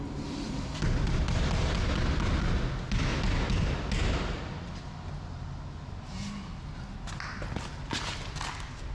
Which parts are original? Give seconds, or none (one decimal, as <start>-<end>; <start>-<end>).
0.0-8.9